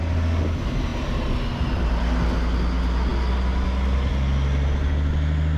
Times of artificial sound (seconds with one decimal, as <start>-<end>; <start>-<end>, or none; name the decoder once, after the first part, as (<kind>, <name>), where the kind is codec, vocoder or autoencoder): none